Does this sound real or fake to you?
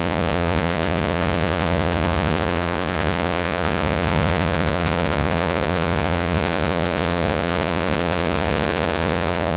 fake